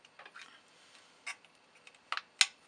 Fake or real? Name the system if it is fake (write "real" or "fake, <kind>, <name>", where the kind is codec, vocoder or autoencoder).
real